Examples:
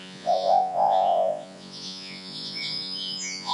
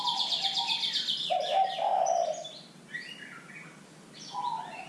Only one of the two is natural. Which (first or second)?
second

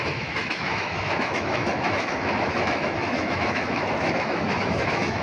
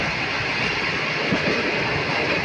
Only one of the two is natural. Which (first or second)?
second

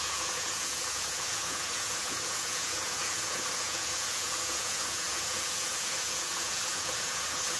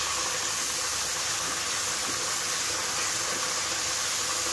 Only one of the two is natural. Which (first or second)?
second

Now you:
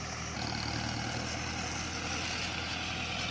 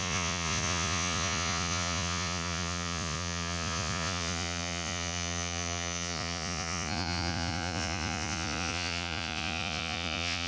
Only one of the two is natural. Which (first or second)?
first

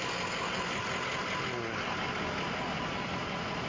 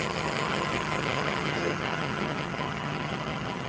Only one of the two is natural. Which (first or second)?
first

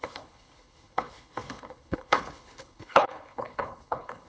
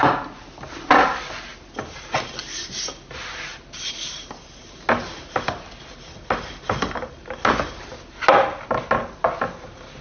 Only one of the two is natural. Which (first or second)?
second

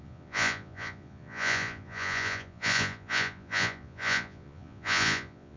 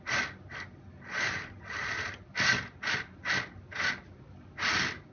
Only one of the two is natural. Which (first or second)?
second